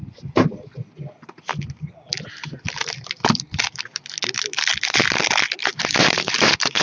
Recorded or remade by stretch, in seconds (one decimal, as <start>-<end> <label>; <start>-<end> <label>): 0.0-1.5 remade; 1.5-5.6 recorded; 5.6-6.8 remade

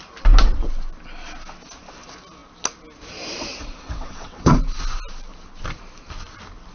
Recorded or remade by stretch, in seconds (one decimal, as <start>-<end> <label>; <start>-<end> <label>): 0.0-3.5 recorded; 3.5-4.6 remade; 4.6-6.7 recorded

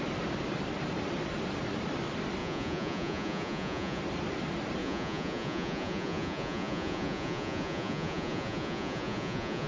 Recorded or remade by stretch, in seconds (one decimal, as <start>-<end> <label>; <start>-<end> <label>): 0.0-2.4 recorded; 2.4-4.0 remade; 4.0-4.8 recorded; 4.8-9.7 remade

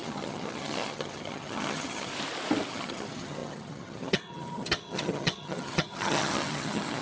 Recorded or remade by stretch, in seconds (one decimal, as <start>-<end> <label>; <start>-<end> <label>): 0.0-2.1 remade; 2.1-2.7 recorded; 2.7-7.0 remade